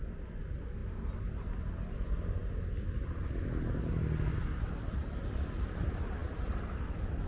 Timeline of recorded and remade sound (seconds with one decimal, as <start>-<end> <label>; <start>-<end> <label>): 0.0-7.3 recorded